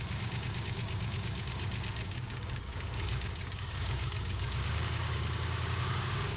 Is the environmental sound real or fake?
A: fake